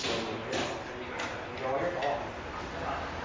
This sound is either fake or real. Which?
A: real